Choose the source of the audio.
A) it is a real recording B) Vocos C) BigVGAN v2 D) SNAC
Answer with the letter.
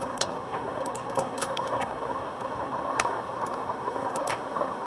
D